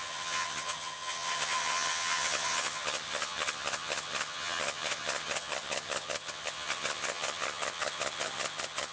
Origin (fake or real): fake